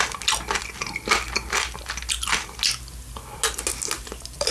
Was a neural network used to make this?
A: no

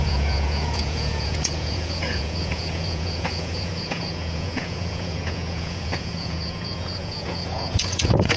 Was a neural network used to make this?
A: yes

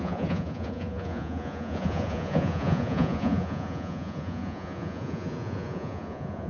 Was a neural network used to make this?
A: yes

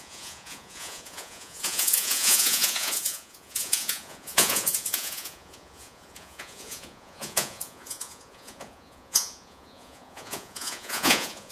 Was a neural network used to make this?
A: yes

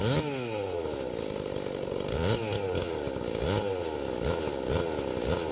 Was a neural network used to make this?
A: no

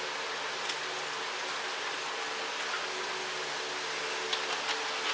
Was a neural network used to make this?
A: no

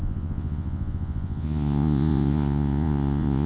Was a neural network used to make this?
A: yes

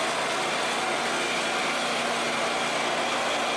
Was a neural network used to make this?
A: no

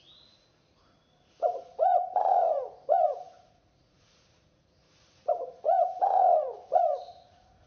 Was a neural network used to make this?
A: yes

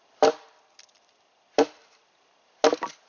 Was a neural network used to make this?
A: no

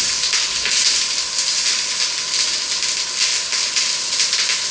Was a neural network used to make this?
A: no